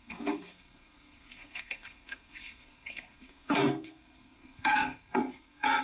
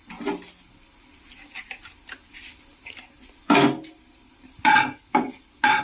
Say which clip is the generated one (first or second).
first